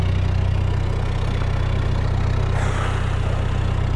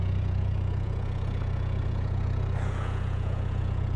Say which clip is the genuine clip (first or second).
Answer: first